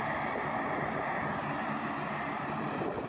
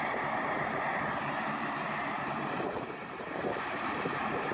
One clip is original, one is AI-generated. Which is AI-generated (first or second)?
second